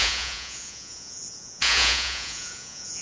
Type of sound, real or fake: fake